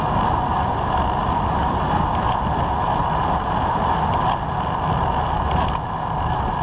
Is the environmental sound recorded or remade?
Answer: recorded